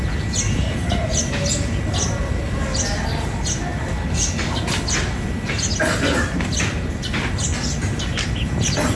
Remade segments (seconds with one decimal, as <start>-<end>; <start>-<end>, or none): none